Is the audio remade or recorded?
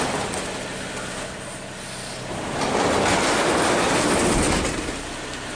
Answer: recorded